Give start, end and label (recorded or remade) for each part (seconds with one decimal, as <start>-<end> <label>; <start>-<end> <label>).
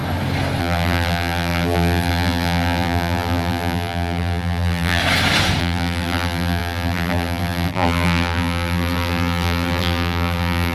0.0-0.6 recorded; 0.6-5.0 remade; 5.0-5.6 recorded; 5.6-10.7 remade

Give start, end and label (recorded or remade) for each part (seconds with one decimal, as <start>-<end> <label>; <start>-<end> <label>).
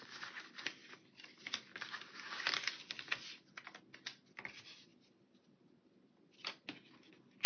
0.0-7.5 recorded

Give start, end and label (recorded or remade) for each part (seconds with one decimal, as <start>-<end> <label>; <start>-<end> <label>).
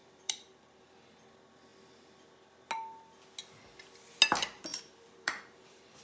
0.0-0.9 remade; 0.9-4.7 recorded; 4.7-6.0 remade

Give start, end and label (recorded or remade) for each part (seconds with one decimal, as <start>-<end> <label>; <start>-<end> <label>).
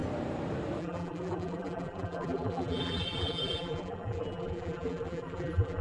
0.0-0.8 recorded; 0.8-5.8 remade